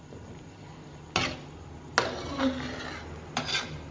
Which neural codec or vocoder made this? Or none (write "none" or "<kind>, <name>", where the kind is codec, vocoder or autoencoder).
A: none